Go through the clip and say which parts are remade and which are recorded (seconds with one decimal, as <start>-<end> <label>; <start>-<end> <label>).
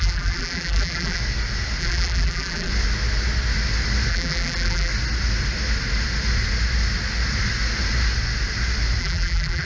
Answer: 0.0-1.2 remade; 1.2-1.8 recorded; 1.8-2.7 remade; 2.7-4.1 recorded; 4.1-4.9 remade; 4.9-9.0 recorded; 9.0-9.6 remade